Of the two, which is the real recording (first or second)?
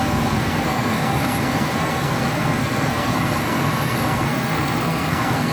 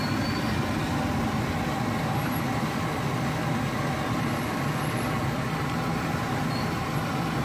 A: second